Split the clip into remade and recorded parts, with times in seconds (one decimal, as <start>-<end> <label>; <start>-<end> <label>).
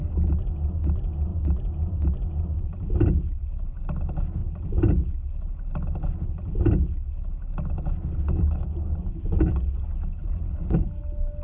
0.0-1.3 recorded; 1.3-3.8 remade; 3.8-10.2 recorded; 10.2-11.0 remade; 11.0-11.4 recorded